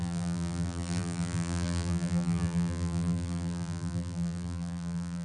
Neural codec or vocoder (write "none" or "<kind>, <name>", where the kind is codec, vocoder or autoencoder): vocoder, BigVGAN v2